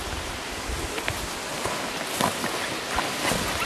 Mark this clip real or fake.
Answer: real